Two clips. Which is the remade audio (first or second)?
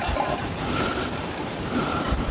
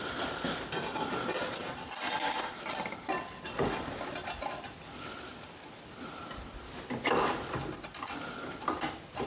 first